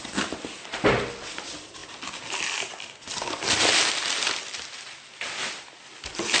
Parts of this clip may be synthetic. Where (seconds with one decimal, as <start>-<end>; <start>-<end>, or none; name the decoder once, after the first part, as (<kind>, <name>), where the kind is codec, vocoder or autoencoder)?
none